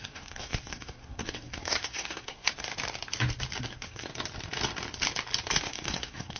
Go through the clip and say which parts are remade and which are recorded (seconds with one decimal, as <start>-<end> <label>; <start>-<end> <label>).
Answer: 0.0-2.7 remade; 2.7-3.6 recorded; 3.6-4.1 remade; 4.1-5.6 recorded; 5.6-6.4 remade

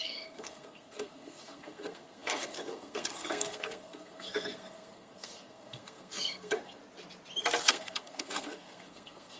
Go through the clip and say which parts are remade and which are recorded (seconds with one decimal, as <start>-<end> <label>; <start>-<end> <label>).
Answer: 0.0-6.8 remade; 6.8-7.6 recorded; 7.6-9.4 remade

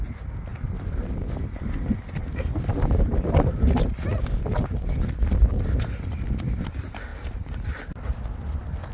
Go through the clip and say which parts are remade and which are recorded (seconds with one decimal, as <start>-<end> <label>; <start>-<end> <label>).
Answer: 0.0-8.9 recorded

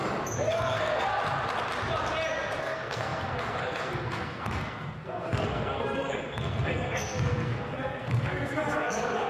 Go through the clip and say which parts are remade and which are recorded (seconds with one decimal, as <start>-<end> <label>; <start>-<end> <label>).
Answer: 0.0-0.5 recorded; 0.5-1.1 remade; 1.1-2.6 recorded; 2.6-9.3 remade